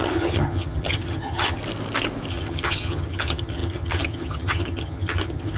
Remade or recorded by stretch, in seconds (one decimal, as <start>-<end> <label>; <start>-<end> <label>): 0.0-1.6 remade; 1.6-2.3 recorded; 2.3-5.6 remade